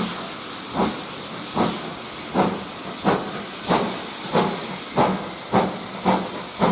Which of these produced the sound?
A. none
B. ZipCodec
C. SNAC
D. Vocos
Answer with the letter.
A